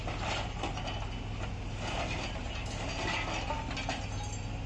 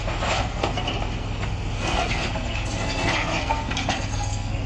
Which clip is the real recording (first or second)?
first